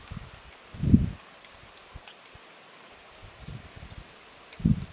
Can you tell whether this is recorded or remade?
recorded